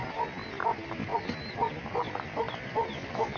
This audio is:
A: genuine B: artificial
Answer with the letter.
A